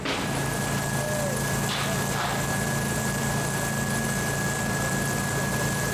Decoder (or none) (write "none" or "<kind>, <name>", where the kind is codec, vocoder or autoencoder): none